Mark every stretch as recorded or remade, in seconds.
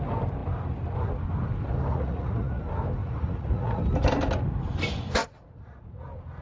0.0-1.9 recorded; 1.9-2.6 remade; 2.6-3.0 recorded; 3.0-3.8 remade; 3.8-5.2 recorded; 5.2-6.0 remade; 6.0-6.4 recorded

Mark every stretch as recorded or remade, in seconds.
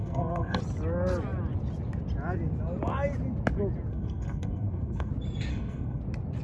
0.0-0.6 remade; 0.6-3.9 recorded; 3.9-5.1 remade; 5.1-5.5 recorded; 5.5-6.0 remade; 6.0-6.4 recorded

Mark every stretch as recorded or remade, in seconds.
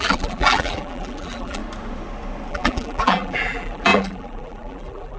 0.0-1.6 remade; 1.6-2.5 recorded; 2.5-5.2 remade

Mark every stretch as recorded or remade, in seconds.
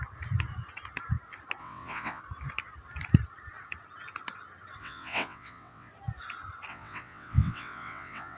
0.0-1.6 recorded; 1.6-2.2 remade; 2.2-4.8 recorded; 4.8-5.9 remade; 5.9-6.7 recorded; 6.7-8.4 remade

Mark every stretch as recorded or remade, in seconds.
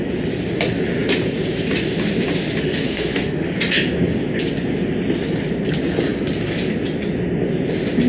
0.0-2.6 recorded; 2.6-3.6 remade; 3.6-8.1 recorded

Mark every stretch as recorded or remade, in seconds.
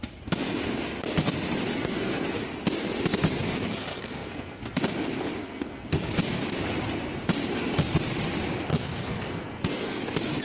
0.0-1.7 recorded; 1.7-2.4 remade; 2.4-3.9 recorded; 3.9-4.8 remade; 4.8-5.4 recorded; 5.4-6.1 remade; 6.1-8.7 recorded; 8.7-10.0 remade; 10.0-10.4 recorded